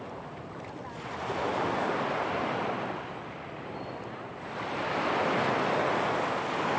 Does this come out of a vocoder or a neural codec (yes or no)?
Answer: no